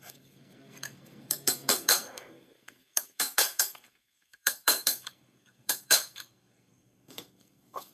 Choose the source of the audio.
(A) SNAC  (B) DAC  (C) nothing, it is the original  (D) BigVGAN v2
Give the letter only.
A